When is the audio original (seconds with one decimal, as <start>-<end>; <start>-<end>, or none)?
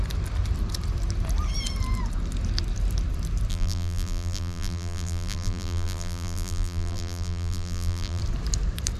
0.0-3.5; 8.2-9.0